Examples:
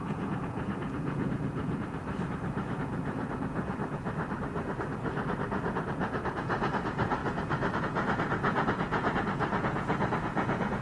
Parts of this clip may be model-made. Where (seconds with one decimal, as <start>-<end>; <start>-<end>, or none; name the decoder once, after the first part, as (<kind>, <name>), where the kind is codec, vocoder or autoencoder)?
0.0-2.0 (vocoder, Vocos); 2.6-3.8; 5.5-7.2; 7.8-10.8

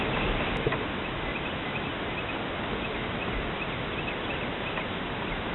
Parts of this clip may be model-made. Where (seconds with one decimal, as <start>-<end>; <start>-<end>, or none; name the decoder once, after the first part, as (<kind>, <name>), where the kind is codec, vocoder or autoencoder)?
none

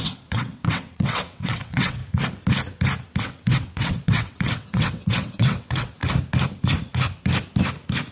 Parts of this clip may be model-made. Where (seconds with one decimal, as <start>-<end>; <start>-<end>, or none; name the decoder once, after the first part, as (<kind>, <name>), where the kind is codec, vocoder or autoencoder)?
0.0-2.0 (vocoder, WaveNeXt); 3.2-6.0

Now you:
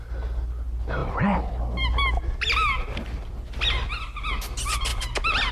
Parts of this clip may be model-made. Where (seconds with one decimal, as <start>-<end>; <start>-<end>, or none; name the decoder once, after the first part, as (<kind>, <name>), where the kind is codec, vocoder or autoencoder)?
none

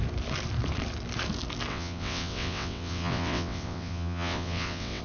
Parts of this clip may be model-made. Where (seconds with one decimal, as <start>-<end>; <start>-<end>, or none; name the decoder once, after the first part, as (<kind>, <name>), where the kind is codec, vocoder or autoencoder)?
1.7-5.0 (vocoder, WaveNeXt)

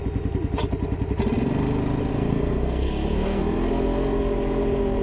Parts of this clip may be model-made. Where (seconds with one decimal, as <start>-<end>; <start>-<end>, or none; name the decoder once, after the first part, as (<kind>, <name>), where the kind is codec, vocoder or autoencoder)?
2.1-3.4 (codec, SNAC)

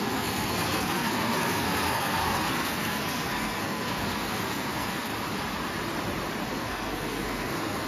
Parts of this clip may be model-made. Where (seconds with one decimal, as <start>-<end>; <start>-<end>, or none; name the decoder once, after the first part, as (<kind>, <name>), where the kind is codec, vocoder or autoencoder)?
0.0-5.1 (codec, SNAC); 6.5-7.9

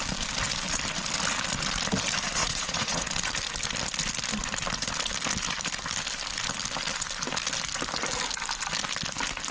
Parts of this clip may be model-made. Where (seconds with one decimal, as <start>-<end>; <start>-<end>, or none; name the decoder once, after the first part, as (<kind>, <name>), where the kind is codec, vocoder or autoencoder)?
2.4-3.1 (vocoder, Vocos)